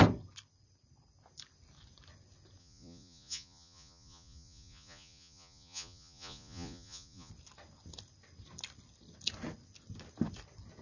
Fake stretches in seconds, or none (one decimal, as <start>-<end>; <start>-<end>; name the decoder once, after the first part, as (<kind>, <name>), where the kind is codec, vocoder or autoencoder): 2.6-7.3 (vocoder, Vocos)